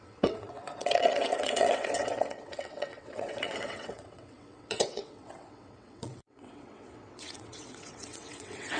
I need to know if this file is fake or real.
fake